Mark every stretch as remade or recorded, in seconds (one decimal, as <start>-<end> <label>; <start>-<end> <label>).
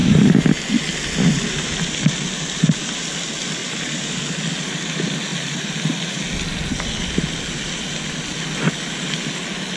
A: 0.0-0.5 remade; 0.5-3.6 recorded; 3.6-4.2 remade; 4.2-9.8 recorded